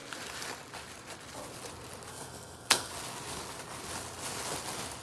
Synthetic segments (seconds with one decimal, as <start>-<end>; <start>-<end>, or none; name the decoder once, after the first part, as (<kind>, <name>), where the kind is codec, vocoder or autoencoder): 2.1-2.9 (codec, SNAC)